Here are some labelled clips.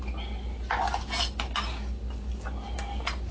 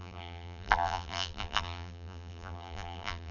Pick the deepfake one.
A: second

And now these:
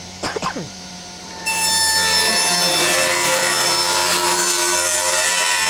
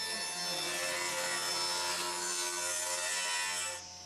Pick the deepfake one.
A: first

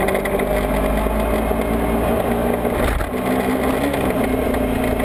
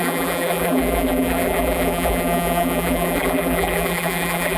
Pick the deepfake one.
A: second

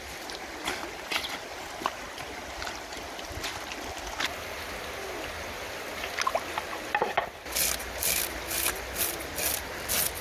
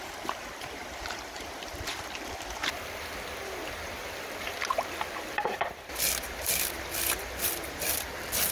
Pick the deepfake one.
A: second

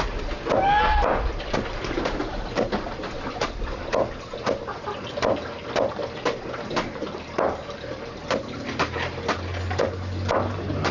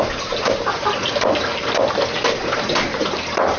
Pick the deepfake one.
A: second